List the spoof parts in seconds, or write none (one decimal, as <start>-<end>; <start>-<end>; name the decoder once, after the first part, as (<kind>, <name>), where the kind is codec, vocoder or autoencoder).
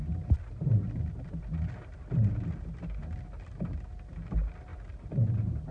4.7-5.7 (vocoder, BigVGAN v2)